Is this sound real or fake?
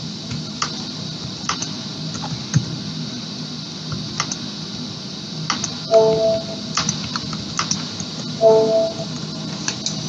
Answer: real